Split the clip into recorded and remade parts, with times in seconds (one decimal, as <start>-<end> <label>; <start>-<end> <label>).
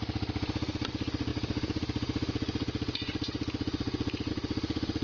0.0-5.0 recorded